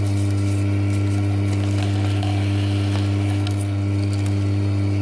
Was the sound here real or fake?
real